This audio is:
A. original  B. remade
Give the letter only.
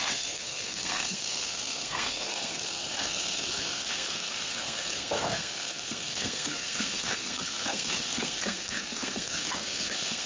B